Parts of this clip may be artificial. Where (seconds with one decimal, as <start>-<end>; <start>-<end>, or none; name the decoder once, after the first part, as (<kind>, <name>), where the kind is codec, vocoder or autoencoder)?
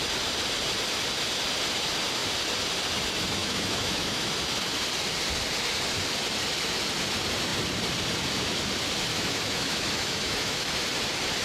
3.4-4.3 (autoencoder, DAC-VAE); 9.1-10.7